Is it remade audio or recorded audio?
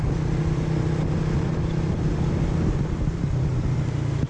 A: recorded